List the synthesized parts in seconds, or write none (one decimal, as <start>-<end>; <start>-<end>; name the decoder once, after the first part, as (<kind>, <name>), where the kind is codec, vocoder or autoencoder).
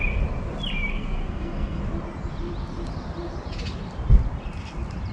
0.9-1.8 (codec, SNAC)